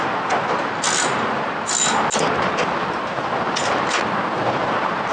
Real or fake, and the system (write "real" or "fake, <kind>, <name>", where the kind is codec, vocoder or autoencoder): real